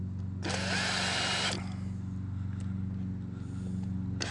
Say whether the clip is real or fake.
real